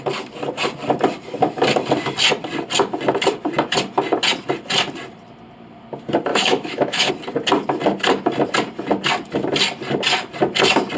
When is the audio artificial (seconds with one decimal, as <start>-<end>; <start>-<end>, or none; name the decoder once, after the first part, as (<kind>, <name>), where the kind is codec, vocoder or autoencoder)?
6.3-7.1 (autoencoder, DAC-VAE)